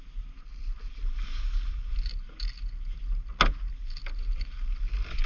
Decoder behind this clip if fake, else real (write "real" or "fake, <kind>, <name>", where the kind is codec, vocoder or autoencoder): real